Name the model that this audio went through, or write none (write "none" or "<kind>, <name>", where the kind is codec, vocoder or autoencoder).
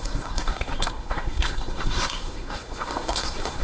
codec, SNAC